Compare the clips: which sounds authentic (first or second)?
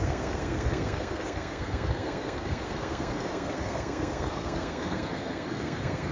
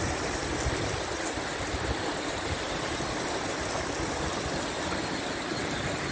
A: second